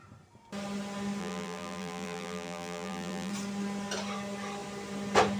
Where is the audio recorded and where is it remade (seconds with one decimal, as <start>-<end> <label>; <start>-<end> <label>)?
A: 0.0-1.2 recorded; 1.2-3.3 remade; 3.3-5.4 recorded